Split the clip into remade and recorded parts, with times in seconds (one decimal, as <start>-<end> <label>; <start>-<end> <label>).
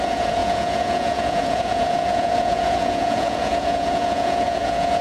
0.0-5.0 remade